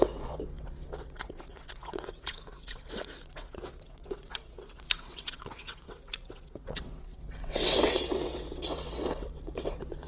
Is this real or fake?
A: fake